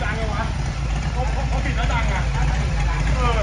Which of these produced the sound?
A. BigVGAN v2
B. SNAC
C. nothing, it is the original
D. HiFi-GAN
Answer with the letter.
C